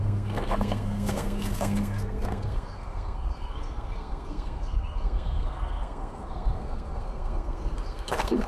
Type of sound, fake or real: fake